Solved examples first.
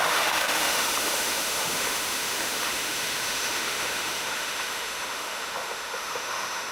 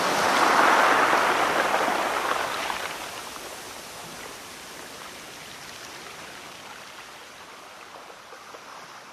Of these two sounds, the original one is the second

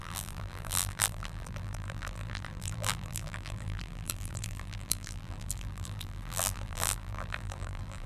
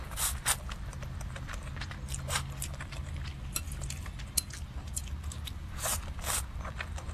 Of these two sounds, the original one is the second